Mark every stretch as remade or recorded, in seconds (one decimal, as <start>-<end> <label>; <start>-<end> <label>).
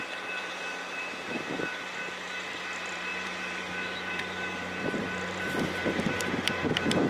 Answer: 0.0-7.1 remade